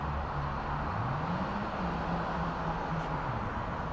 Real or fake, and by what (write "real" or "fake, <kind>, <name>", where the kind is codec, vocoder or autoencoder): real